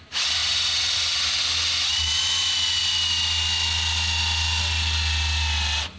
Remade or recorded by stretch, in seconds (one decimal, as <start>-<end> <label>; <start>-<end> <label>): 0.0-6.0 recorded